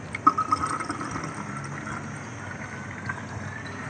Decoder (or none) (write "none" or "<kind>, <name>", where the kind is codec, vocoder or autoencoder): none